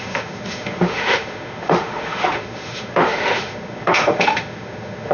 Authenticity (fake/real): fake